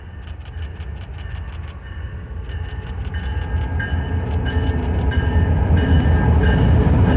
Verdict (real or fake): real